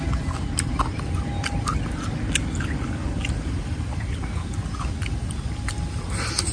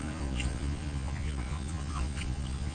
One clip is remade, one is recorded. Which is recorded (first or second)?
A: first